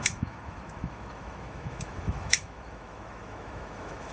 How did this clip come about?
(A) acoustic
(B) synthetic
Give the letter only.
B